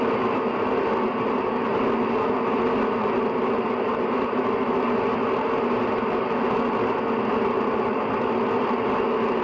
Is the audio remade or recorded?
recorded